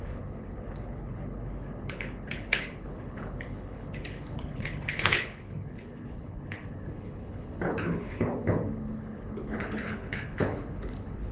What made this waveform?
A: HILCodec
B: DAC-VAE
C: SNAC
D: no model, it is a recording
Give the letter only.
A